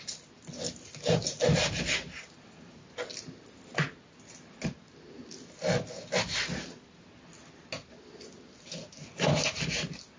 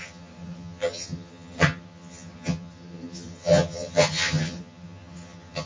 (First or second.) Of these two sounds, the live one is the first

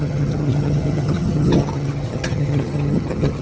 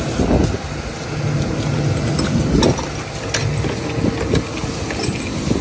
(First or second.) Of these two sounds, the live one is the second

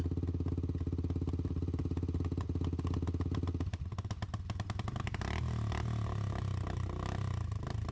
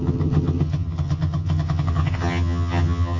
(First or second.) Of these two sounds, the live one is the first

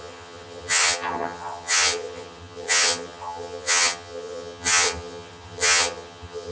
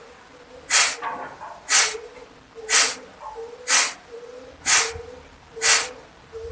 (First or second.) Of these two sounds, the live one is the second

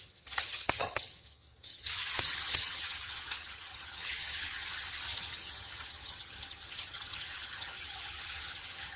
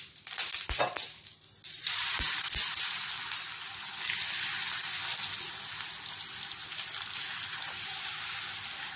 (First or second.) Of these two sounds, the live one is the second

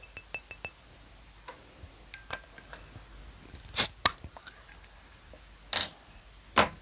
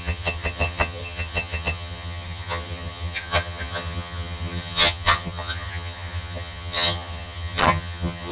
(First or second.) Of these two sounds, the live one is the first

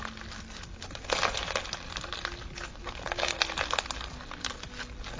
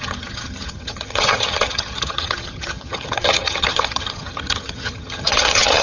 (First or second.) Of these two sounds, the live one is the first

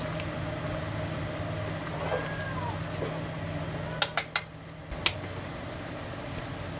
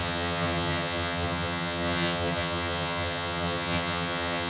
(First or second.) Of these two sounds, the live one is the first